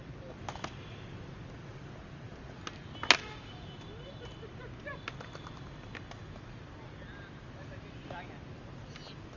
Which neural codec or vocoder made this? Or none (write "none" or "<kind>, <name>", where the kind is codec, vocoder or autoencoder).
none